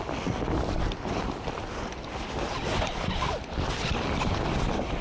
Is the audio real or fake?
real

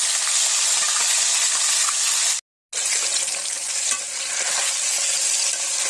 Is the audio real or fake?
real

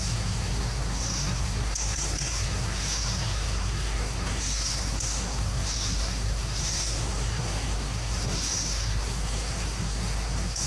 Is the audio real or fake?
fake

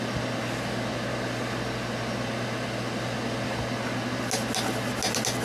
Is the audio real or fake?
real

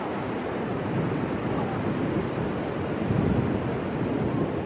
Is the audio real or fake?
real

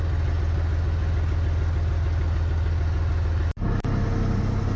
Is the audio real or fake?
real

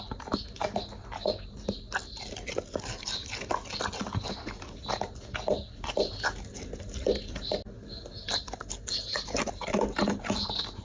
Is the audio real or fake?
real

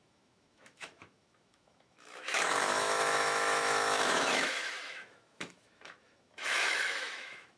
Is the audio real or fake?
fake